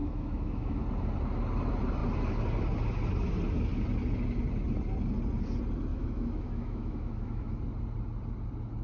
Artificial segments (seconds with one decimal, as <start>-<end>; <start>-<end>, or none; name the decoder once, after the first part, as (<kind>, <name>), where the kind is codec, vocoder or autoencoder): 0.0-0.8 (autoencoder, DAC-VAE); 5.9-7.6